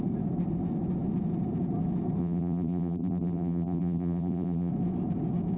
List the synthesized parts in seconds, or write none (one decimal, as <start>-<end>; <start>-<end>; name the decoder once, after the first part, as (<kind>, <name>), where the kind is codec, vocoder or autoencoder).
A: 2.2-4.7 (vocoder, BigVGAN v2)